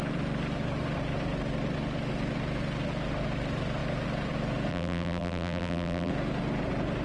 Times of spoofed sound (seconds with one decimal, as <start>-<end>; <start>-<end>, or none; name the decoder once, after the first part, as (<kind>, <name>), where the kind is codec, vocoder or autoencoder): 4.7-6.1 (vocoder, BigVGAN v2)